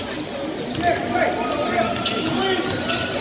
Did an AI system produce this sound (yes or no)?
no